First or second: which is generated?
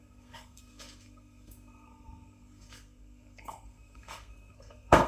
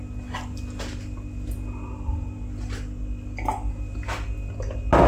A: first